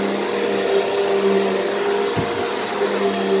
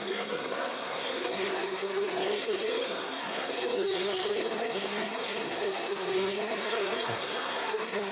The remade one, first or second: second